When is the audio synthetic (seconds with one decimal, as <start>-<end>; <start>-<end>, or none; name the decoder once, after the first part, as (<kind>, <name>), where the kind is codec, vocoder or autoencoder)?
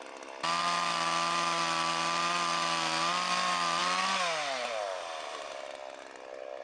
none